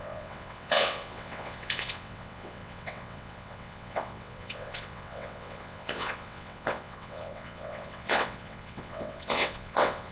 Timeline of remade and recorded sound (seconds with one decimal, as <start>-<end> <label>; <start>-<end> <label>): 0.0-10.1 remade